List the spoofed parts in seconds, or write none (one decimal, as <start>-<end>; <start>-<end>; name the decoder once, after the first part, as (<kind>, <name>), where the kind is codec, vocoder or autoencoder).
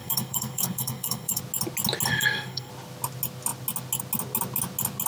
0.0-1.4 (codec, SNAC); 2.1-2.7